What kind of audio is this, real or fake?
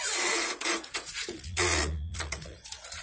fake